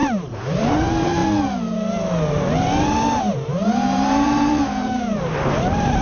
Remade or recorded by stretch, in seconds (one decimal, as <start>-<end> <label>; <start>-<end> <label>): 0.0-1.2 remade; 1.2-3.2 recorded; 3.2-6.0 remade